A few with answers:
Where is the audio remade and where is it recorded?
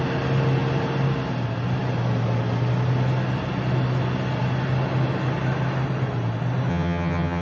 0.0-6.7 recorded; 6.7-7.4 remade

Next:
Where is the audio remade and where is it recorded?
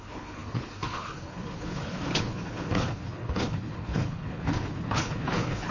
0.0-5.7 remade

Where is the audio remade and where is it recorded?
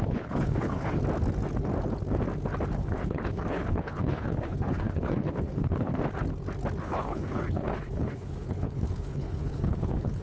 0.0-1.0 remade; 1.0-2.7 recorded; 2.7-5.9 remade; 5.9-6.8 recorded; 6.8-10.2 remade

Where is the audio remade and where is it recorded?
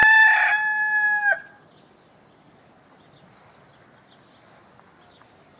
0.0-5.6 recorded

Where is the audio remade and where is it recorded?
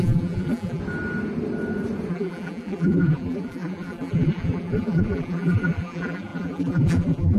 0.0-0.8 remade; 0.8-2.1 recorded; 2.1-7.4 remade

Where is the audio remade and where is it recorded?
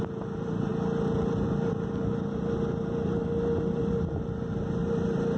0.0-5.4 recorded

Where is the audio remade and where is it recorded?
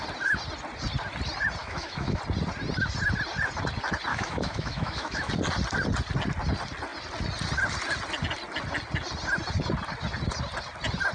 0.0-1.6 recorded; 1.6-2.2 remade; 2.2-4.1 recorded; 4.1-5.3 remade; 5.3-11.1 recorded